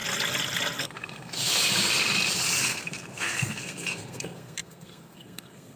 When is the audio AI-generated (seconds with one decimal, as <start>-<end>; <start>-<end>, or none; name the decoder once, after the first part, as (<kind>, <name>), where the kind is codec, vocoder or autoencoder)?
0.8-1.5 (codec, SNAC); 2.6-5.8